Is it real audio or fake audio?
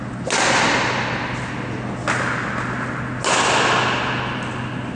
real